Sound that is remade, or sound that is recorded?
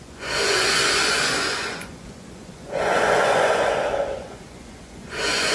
remade